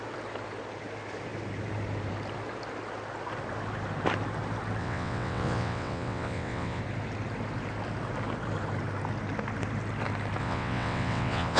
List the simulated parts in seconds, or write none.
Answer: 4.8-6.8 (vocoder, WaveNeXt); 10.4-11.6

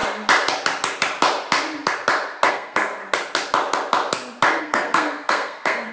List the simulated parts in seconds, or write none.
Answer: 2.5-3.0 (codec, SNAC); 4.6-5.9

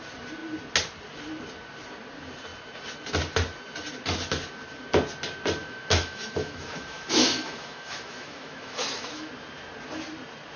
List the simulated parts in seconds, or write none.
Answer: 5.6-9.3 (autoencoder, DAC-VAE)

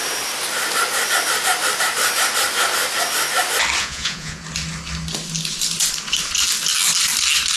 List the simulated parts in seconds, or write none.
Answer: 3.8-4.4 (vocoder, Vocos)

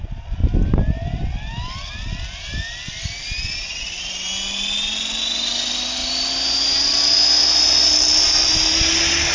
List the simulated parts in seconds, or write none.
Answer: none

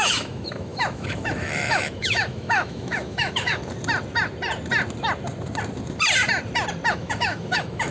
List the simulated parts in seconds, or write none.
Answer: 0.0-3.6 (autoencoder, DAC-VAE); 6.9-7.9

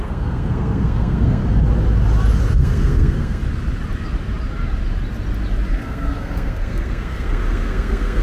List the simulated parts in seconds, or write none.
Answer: 0.0-1.4 (codec, SNAC); 2.6-3.4; 5.7-8.2

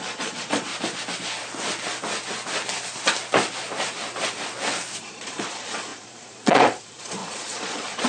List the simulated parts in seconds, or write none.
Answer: 0.0-0.7 (vocoder, Vocos); 5.0-8.1